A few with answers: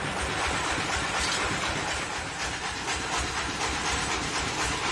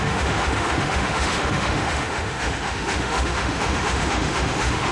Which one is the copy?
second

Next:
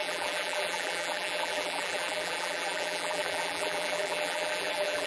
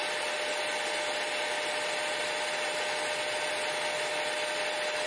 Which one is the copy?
first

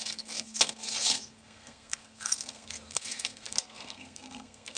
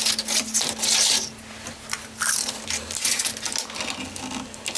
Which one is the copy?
first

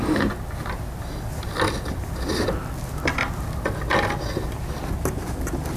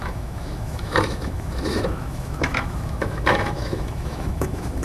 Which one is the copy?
second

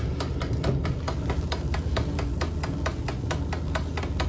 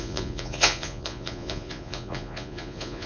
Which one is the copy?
second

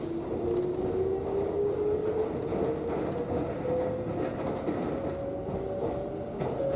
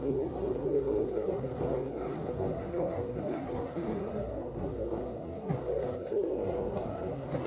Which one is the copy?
second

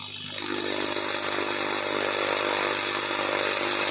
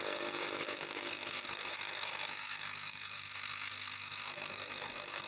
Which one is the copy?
second